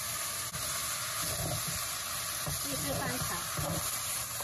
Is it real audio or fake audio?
real